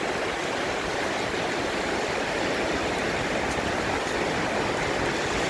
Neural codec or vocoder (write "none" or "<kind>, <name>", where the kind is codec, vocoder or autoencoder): none